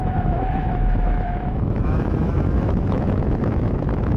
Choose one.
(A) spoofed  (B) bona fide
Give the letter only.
A